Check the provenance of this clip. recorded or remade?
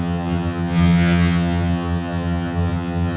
remade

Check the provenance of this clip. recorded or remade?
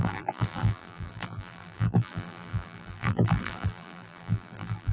remade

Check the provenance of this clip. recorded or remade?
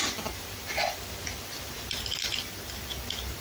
recorded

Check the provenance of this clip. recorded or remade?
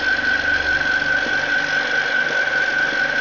recorded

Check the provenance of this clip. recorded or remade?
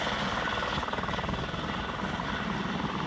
recorded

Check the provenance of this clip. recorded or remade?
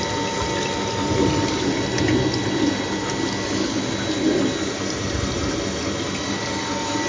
recorded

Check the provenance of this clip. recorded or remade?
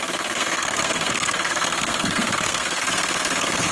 remade